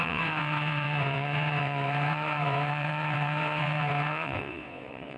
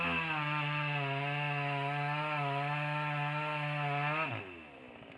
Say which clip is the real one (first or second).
second